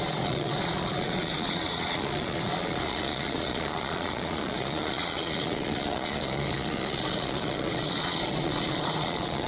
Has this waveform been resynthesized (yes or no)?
yes